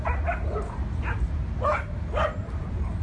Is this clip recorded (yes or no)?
yes